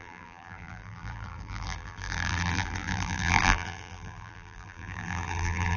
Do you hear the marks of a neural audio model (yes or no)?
yes